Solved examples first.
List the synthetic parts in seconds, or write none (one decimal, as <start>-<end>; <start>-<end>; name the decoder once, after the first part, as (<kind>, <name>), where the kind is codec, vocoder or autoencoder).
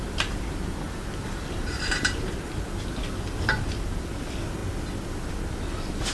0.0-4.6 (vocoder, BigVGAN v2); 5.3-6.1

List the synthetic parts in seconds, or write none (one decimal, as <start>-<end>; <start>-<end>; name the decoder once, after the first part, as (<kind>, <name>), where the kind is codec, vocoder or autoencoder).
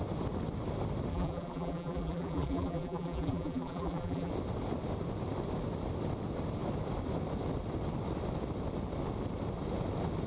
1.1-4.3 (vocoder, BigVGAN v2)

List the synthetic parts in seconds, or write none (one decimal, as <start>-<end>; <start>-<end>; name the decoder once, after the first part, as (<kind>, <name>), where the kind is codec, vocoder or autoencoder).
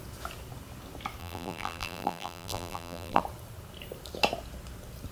1.2-3.2 (vocoder, BigVGAN v2)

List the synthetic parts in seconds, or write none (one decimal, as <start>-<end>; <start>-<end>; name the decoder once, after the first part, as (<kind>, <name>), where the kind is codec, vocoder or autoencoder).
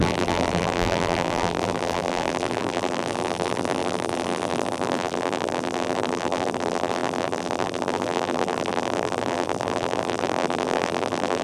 0.0-11.4 (vocoder, BigVGAN v2)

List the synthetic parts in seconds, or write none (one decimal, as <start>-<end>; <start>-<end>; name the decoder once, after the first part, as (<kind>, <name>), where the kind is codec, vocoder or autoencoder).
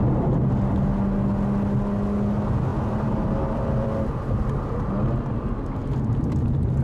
2.7-4.4 (vocoder, BigVGAN v2)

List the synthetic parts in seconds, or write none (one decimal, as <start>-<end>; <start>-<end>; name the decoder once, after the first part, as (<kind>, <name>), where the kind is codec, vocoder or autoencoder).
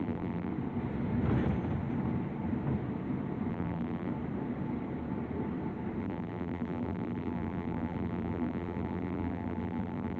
0.0-0.5 (vocoder, BigVGAN v2); 3.5-4.1; 6.0-10.2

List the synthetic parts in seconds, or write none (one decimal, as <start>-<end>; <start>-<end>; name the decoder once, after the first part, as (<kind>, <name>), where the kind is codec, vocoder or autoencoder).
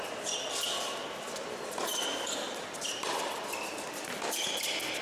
1.9-5.0 (vocoder, BigVGAN v2)